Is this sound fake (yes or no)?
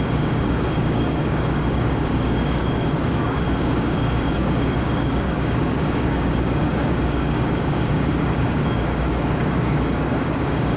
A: yes